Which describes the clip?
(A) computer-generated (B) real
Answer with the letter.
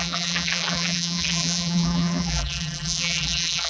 A